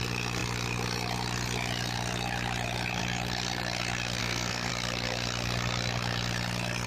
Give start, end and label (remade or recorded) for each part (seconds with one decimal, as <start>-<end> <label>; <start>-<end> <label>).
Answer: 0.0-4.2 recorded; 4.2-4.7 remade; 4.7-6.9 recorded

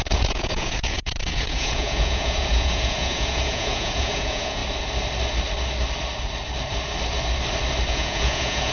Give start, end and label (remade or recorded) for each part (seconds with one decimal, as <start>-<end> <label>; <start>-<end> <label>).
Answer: 0.0-4.6 remade; 4.6-7.9 recorded; 7.9-8.7 remade

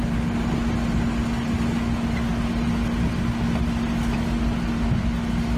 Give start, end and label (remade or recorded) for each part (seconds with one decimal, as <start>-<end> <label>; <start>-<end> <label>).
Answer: 0.0-5.6 recorded